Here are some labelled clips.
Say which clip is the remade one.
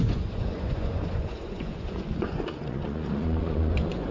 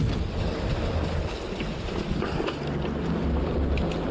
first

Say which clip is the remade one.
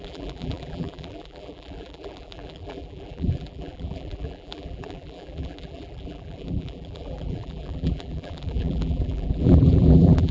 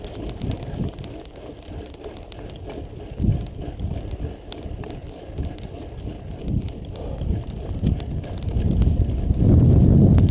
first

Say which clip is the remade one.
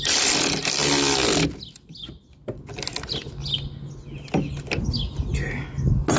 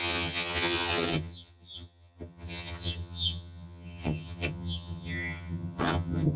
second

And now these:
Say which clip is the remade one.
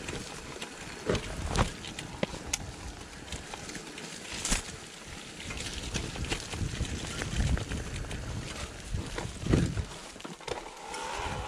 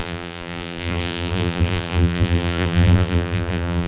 second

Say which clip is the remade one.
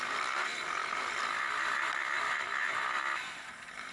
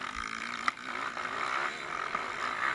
first